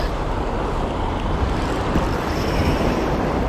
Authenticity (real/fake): real